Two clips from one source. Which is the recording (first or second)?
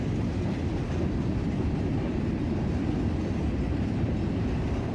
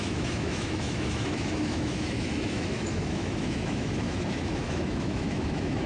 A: first